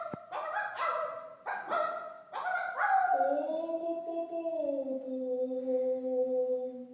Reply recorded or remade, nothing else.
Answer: recorded